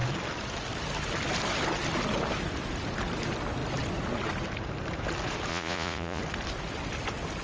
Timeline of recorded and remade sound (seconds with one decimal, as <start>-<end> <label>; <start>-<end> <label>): 0.0-5.5 recorded; 5.5-6.2 remade; 6.2-7.4 recorded

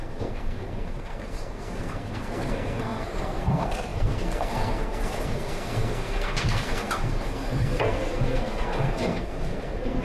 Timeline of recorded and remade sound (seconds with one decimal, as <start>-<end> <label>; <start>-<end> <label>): 0.0-10.0 remade

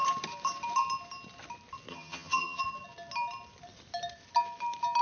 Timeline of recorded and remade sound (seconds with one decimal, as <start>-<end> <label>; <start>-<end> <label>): 0.0-1.9 recorded; 1.9-2.6 remade; 2.6-5.0 recorded

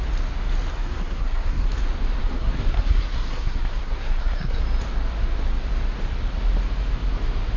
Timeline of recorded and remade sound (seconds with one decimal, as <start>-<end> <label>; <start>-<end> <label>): 0.0-0.7 recorded; 0.7-1.7 remade; 1.7-2.2 recorded; 2.2-4.6 remade; 4.6-7.6 recorded

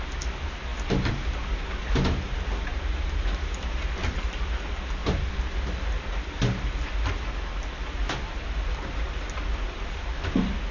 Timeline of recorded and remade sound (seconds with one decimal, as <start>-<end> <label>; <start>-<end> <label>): 0.0-10.7 recorded

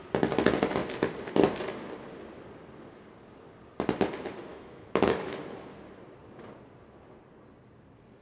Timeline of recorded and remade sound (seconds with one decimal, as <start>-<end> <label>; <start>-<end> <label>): 0.0-4.5 recorded; 4.5-5.4 remade; 5.4-8.2 recorded

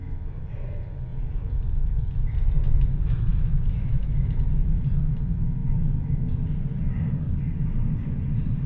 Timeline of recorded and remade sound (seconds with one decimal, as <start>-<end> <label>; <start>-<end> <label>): 0.0-3.3 recorded; 3.3-4.4 remade; 4.4-8.7 recorded

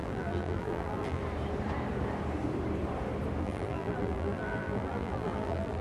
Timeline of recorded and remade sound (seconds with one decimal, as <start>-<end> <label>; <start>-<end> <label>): 0.0-1.2 remade; 1.2-3.4 recorded; 3.4-5.8 remade